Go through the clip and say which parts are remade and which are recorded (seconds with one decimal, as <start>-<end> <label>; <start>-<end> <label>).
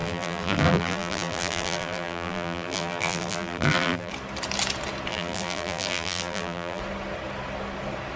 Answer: 0.0-4.1 remade; 4.1-5.1 recorded; 5.1-6.8 remade; 6.8-8.2 recorded